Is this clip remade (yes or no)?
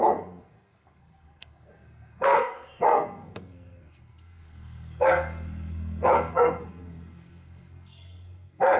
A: yes